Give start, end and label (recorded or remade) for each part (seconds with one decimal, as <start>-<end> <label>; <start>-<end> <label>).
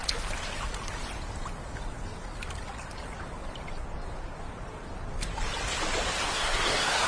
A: 0.0-6.2 recorded; 6.2-7.1 remade